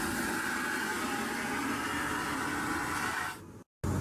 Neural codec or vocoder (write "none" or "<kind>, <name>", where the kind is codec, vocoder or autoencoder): none